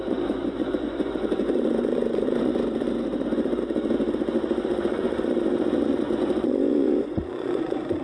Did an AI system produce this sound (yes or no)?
yes